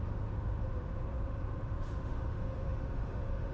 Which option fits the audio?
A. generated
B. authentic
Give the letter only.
A